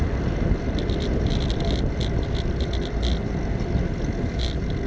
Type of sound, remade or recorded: recorded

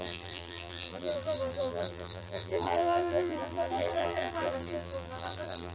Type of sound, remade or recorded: remade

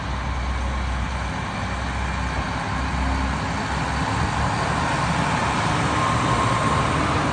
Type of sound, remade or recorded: recorded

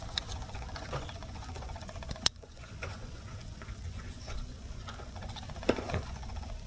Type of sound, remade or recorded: remade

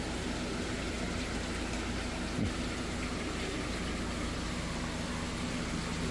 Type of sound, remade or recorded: recorded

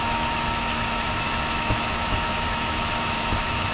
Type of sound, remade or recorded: remade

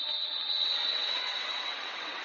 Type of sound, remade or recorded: remade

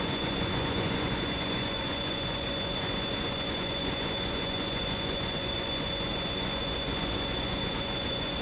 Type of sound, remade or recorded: remade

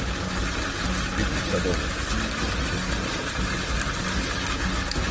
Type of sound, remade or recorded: recorded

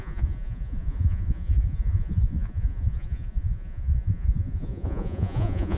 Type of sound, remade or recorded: remade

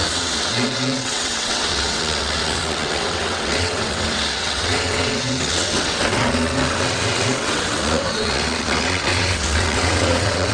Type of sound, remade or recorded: remade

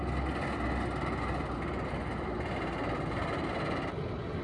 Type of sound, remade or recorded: recorded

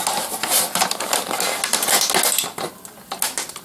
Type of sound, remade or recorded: recorded